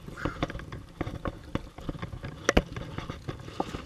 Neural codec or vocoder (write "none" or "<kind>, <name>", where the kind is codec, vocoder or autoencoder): none